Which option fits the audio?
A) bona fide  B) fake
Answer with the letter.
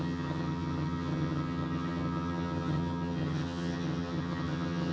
B